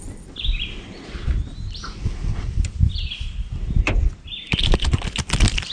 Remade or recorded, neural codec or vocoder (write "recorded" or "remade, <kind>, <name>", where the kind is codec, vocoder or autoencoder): recorded